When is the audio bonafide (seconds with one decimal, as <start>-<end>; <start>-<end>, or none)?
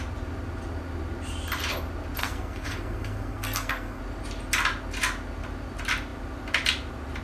0.0-2.2; 4.0-7.2